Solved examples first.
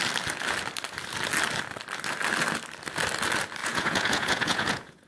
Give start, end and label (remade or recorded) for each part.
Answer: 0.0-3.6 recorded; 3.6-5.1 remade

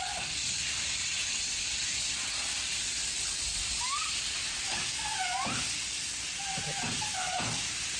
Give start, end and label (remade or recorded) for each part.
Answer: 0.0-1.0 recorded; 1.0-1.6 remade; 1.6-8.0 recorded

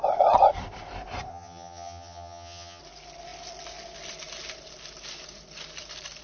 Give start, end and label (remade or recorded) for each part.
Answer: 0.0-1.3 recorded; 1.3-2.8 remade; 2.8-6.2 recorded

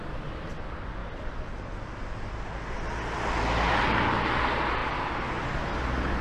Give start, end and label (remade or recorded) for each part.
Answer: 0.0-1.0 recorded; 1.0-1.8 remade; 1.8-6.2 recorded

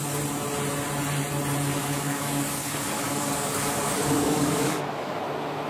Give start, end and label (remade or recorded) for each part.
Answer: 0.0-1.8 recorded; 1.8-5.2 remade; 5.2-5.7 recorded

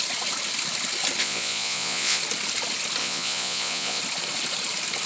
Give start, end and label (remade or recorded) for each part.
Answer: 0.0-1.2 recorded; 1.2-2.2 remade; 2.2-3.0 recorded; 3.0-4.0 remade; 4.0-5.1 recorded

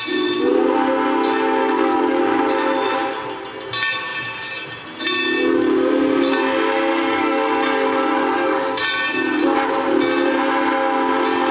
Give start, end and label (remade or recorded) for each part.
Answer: 0.0-1.6 recorded; 1.6-2.2 remade; 2.2-6.9 recorded; 6.9-8.8 remade; 8.8-11.5 recorded

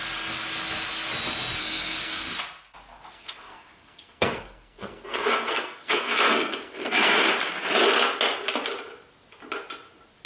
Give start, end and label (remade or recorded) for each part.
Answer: 0.0-1.6 recorded; 1.6-2.3 remade; 2.3-2.9 recorded; 2.9-7.3 remade; 7.3-10.3 recorded